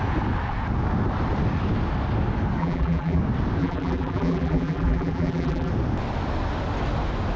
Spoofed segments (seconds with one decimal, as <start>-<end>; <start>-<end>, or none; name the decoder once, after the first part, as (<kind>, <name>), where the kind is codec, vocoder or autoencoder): 2.6-3.2 (vocoder, BigVGAN v2); 3.6-5.7